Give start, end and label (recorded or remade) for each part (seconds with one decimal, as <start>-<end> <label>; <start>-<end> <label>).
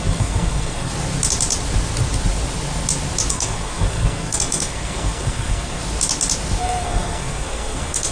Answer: 0.0-0.9 remade; 0.9-3.3 recorded; 3.3-5.8 remade; 5.8-6.6 recorded; 6.6-8.1 remade